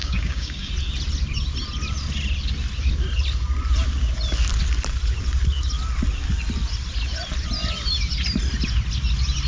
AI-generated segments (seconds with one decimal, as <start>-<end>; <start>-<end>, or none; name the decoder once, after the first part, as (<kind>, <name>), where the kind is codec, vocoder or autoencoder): 0.0-0.7 (codec, DAC)